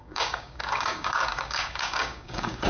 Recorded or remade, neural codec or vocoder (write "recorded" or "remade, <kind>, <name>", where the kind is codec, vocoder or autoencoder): remade, codec, DAC